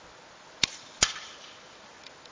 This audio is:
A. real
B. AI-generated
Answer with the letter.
A